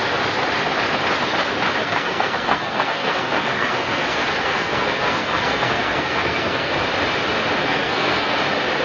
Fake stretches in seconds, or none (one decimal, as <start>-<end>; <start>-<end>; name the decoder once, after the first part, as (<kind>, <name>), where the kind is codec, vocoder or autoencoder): 1.8-6.7 (codec, SNAC); 7.6-8.4